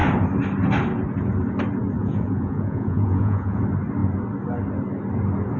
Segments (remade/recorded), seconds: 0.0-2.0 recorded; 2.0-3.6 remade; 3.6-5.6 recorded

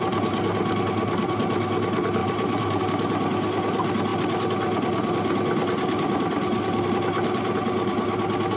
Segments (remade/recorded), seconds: 0.0-2.2 recorded; 2.2-2.8 remade; 2.8-8.6 recorded

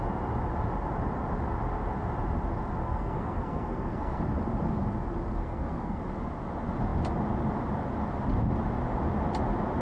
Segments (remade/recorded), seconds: 0.0-2.8 recorded; 2.8-4.2 remade; 4.2-5.4 recorded; 5.4-6.0 remade; 6.0-9.8 recorded

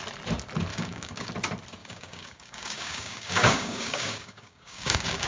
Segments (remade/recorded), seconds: 0.0-0.7 recorded; 0.7-1.3 remade; 1.3-1.8 recorded; 1.8-5.3 remade